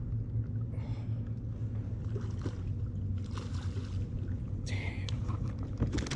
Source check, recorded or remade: recorded